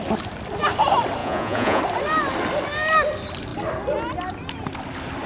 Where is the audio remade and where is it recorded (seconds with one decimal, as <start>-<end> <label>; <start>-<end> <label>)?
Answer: 0.0-1.2 recorded; 1.2-1.8 remade; 1.8-5.3 recorded